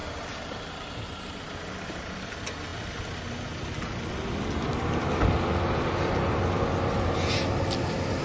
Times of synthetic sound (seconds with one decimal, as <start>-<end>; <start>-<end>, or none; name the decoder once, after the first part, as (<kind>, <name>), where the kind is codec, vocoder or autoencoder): none